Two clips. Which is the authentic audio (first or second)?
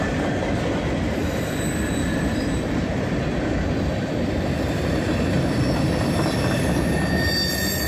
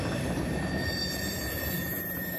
first